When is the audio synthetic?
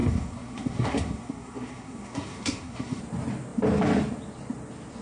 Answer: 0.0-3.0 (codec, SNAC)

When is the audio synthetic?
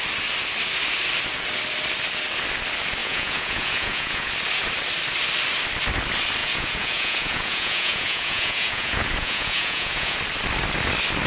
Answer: 3.0-4.3 (vocoder, Vocos); 6.4-10.2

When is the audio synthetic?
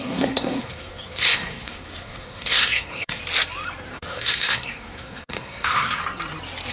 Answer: 0.0-3.2 (codec, SNAC); 3.9-6.0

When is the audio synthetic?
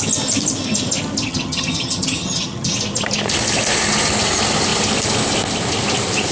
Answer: 1.2-2.7 (vocoder, HiFi-GAN)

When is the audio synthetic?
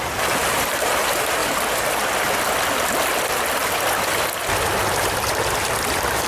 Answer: 0.0-1.4 (vocoder, BigVGAN v2); 5.0-6.3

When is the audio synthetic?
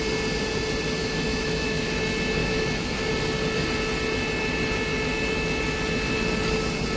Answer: 1.0-2.0 (autoencoder, DAC-VAE); 2.4-3.1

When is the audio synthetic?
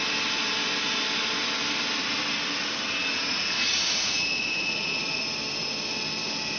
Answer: 3.1-5.2 (vocoder, Vocos)